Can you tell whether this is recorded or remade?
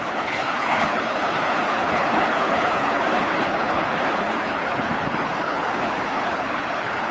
remade